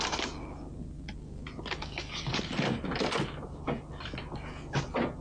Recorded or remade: recorded